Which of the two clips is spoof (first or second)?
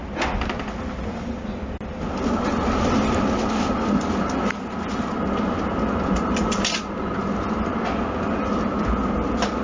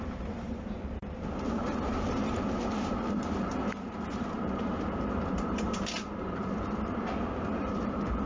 second